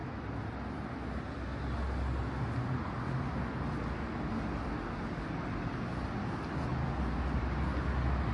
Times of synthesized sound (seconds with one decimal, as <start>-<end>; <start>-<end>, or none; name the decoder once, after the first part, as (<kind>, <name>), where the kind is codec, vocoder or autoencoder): none